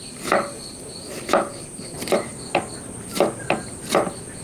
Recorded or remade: recorded